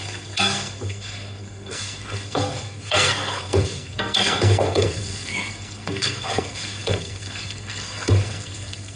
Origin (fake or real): fake